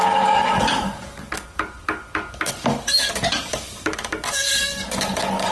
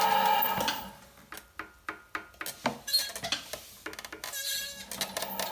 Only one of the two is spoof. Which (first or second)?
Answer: first